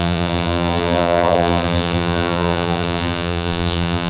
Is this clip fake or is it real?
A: fake